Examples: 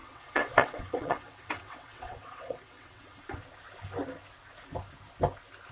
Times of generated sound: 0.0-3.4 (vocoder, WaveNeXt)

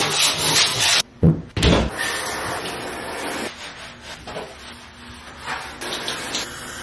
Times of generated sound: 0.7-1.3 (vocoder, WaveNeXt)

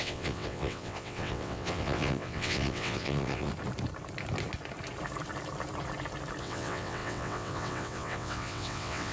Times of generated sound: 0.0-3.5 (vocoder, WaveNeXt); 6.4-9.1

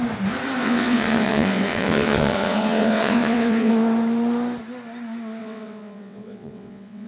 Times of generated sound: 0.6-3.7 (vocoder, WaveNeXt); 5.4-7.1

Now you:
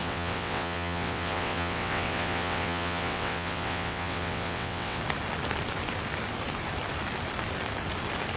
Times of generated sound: 0.0-5.0 (vocoder, WaveNeXt)

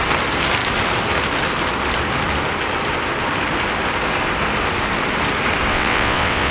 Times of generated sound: 5.7-6.5 (vocoder, WaveNeXt)

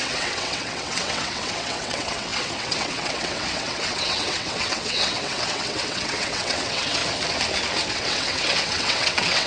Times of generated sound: 0.0-7.0 (vocoder, WaveNeXt); 7.9-9.5

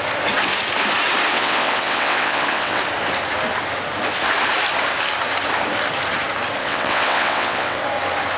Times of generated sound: 1.3-2.8 (vocoder, WaveNeXt); 6.6-7.8